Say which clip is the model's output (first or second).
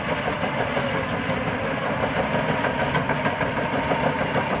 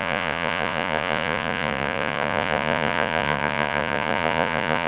second